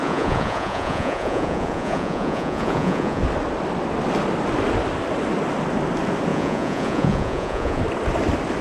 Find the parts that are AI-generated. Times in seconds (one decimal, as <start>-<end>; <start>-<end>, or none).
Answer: 0.0-3.2; 6.3-7.8